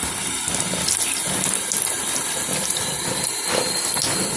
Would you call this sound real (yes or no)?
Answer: yes